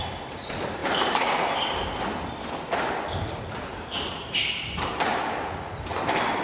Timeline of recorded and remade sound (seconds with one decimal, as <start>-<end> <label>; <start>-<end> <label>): 0.0-6.4 recorded